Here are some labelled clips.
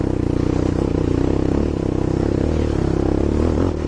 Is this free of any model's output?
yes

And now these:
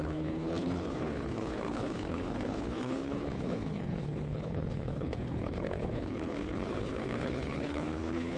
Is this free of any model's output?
no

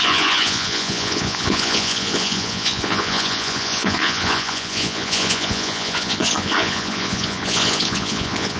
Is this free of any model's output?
no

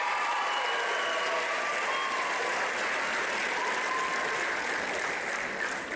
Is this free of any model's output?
yes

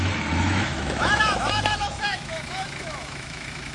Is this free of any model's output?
no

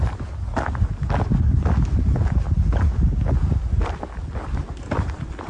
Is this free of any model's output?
yes